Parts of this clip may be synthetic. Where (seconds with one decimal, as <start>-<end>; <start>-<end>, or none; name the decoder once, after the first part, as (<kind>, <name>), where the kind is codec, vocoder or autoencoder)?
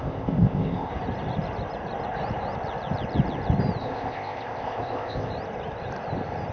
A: 0.0-0.9 (codec, ZipCodec); 3.8-5.3